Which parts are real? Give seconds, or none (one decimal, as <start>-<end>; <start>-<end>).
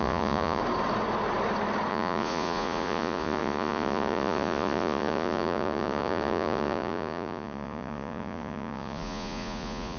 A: 0.6-1.9